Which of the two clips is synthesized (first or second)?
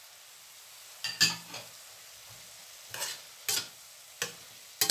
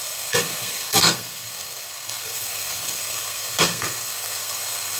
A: second